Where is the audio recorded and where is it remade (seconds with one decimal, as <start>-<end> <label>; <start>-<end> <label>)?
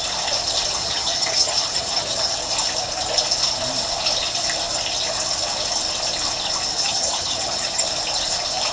0.0-0.8 recorded; 0.8-2.4 remade; 2.4-6.7 recorded; 6.7-7.8 remade; 7.8-8.7 recorded